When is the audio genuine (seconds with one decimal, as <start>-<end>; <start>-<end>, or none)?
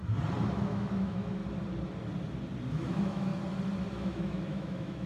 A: 0.0-0.5; 1.4-2.7; 3.3-3.9